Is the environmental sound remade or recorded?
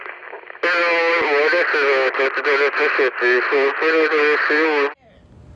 recorded